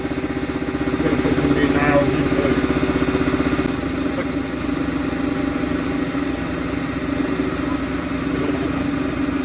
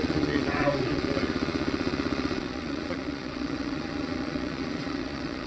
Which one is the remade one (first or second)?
second